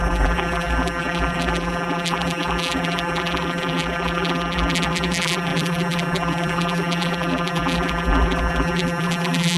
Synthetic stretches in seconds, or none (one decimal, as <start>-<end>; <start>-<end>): 0.0-9.6